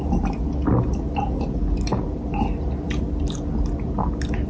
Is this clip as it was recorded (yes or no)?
yes